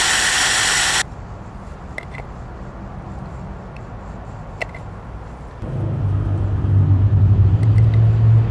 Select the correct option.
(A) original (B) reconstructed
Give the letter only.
A